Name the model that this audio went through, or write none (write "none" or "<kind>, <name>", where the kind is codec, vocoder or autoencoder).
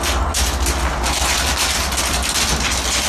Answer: none